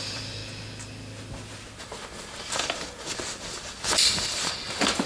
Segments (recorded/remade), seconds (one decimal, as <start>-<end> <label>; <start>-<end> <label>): 0.0-0.4 remade; 0.4-1.8 recorded; 1.8-5.1 remade